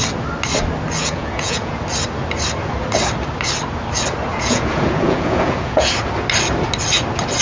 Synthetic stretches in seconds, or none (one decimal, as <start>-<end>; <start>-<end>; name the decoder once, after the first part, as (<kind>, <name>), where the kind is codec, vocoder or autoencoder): 1.0-1.8 (vocoder, Vocos); 4.3-5.9